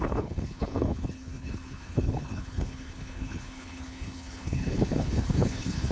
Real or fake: fake